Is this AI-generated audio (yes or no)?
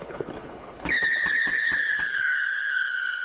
yes